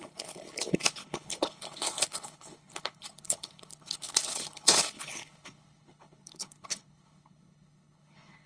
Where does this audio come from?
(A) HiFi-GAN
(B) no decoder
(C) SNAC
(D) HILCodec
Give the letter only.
D